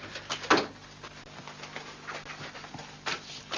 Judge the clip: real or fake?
real